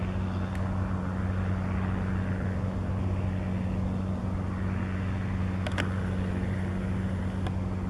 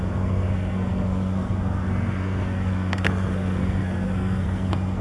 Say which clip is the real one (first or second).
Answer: first